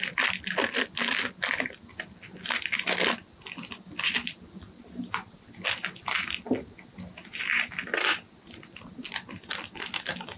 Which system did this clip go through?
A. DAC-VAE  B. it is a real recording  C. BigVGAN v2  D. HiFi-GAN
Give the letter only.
B